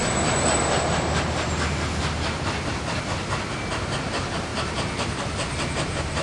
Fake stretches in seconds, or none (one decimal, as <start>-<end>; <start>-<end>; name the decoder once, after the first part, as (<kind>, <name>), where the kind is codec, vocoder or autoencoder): 3.7-4.5 (vocoder, BigVGAN v2); 5.7-6.2

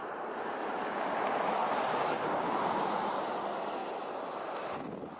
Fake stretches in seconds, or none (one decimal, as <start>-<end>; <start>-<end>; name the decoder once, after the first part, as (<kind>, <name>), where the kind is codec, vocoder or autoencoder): none

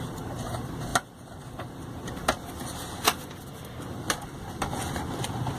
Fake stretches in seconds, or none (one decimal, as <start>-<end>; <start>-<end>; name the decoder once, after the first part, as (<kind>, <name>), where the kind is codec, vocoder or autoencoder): none